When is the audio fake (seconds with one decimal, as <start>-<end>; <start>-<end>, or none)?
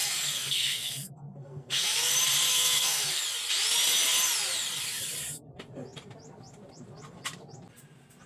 0.0-2.1; 2.5-3.2